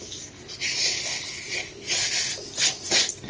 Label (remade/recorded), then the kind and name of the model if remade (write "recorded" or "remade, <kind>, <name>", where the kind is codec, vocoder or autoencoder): recorded